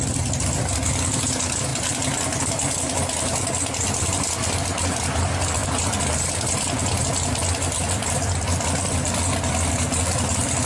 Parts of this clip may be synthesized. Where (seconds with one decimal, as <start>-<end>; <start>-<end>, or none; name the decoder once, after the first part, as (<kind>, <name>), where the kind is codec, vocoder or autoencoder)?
none